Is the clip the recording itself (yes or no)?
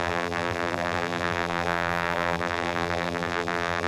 no